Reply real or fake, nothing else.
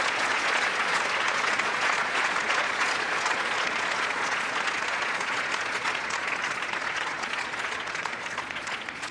fake